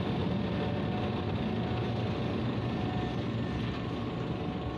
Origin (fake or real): real